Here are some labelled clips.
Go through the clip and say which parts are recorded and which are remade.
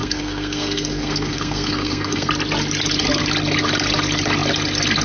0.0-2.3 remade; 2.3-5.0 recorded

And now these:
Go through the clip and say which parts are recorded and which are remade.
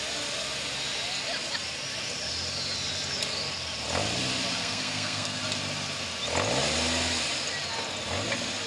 0.0-4.6 recorded; 4.6-5.4 remade; 5.4-8.7 recorded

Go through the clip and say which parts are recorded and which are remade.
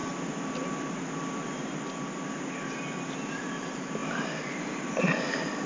0.0-5.7 recorded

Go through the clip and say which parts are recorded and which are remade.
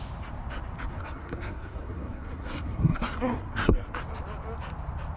0.0-0.9 recorded; 0.9-4.0 remade; 4.0-5.2 recorded